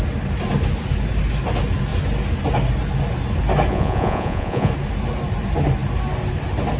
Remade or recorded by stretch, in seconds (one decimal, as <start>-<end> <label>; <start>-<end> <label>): 0.0-3.7 recorded; 3.7-4.7 remade; 4.7-6.8 recorded

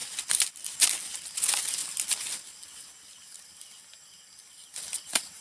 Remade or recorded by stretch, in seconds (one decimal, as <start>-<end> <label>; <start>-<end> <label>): 0.0-5.4 recorded

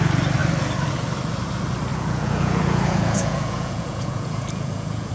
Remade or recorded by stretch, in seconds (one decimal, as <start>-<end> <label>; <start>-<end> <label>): 0.0-1.9 recorded; 1.9-5.1 remade

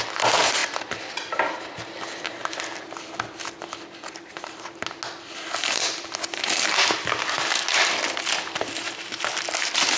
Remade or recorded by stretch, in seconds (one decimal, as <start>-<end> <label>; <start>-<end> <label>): 0.0-10.0 recorded

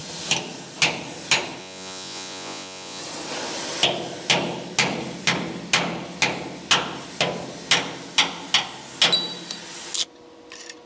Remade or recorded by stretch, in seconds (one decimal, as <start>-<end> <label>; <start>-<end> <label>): 0.0-1.6 recorded; 1.6-3.0 remade; 3.0-10.9 recorded

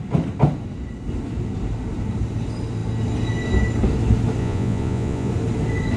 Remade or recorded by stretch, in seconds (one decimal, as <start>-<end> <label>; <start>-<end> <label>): 0.0-4.4 recorded; 4.4-5.3 remade; 5.3-6.0 recorded